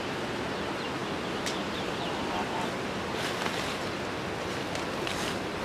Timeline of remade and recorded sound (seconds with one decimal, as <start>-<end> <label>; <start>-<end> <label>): 0.0-5.6 recorded